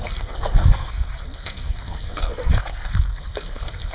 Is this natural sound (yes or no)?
no